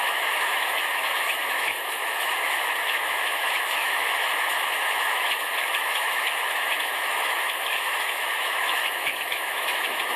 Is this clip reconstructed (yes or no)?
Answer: yes